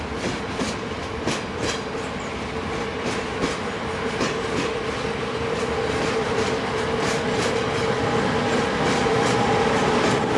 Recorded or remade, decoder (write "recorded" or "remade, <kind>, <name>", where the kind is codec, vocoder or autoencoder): recorded